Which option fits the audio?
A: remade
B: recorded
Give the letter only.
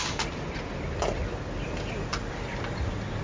B